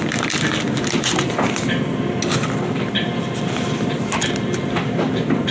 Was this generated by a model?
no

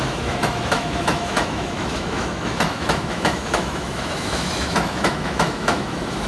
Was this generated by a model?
yes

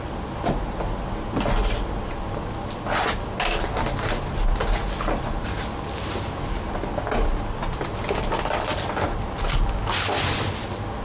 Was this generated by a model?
no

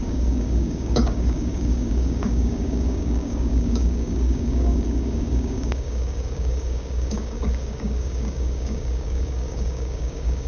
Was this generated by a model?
yes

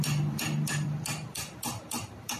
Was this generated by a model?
yes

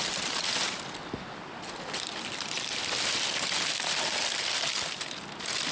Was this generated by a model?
no